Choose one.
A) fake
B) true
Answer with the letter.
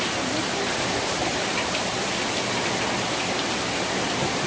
B